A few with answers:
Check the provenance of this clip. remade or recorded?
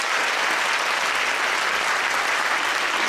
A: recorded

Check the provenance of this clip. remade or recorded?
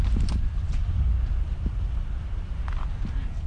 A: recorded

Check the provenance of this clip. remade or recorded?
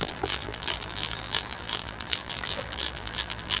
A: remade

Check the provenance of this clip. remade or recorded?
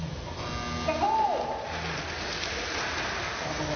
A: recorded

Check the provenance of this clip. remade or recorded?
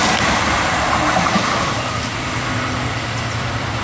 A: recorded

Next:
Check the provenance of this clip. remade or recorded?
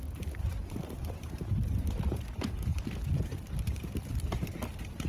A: remade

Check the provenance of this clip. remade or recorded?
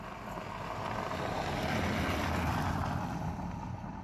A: recorded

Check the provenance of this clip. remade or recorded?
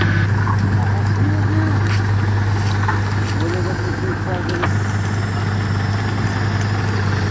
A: recorded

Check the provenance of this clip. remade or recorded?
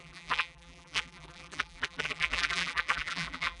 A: remade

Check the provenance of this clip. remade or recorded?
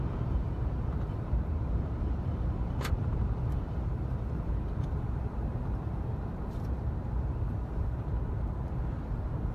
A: remade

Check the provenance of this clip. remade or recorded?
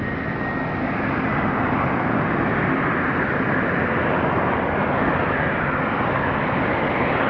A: recorded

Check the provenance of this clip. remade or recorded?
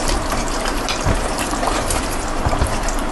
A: remade